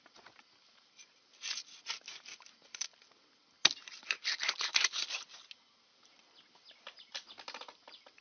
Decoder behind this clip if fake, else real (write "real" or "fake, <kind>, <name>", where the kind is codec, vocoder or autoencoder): real